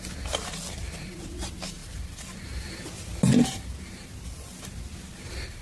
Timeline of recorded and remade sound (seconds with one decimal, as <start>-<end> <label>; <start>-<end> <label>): 0.0-5.6 recorded